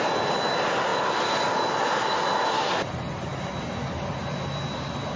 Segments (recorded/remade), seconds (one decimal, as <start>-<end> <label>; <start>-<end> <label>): 0.0-5.2 recorded